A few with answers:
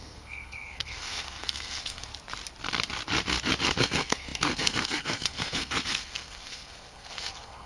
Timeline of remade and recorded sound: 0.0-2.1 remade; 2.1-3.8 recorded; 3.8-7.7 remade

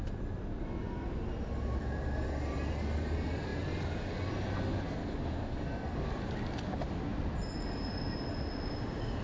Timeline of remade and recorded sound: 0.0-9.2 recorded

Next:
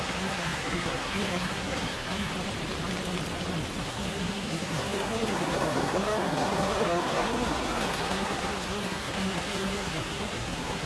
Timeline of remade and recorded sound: 0.0-2.3 remade; 2.3-3.8 recorded; 3.8-10.9 remade

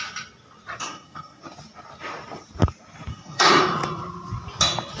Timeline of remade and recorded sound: 0.0-0.8 recorded; 0.8-1.4 remade; 1.4-3.1 recorded; 3.1-3.6 remade; 3.6-5.0 recorded

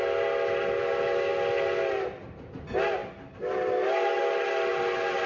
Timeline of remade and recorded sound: 0.0-5.3 recorded

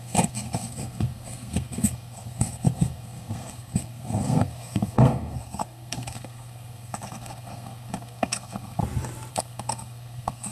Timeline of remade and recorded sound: 0.0-8.8 remade; 8.8-9.3 recorded; 9.3-10.5 remade